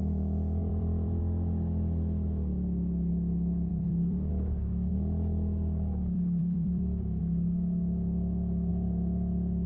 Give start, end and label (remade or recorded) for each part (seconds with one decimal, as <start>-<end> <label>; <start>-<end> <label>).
0.0-0.6 recorded; 0.6-1.2 remade; 1.2-3.7 recorded; 3.7-4.3 remade; 4.3-4.9 recorded; 4.9-7.2 remade; 7.2-9.7 recorded